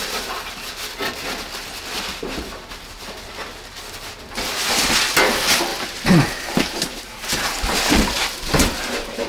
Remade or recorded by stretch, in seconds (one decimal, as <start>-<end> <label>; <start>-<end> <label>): 0.0-5.7 recorded; 5.7-9.3 remade